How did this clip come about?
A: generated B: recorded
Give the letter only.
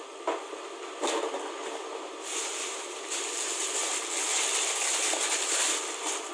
B